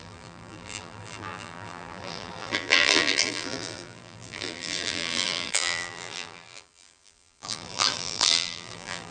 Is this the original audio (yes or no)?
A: no